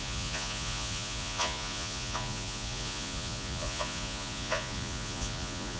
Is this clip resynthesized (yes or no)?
yes